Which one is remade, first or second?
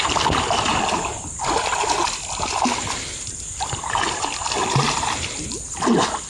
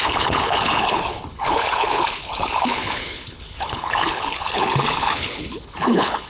second